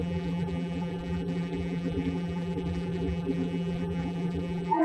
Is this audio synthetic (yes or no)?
yes